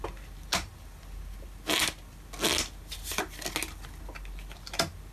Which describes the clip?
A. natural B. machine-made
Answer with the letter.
A